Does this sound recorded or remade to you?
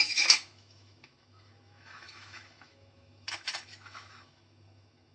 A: remade